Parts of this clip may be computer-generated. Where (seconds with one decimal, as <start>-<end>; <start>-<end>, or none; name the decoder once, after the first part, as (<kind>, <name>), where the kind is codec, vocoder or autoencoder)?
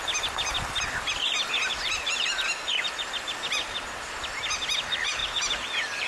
1.6-4.4 (vocoder, BigVGAN v2); 5.2-6.1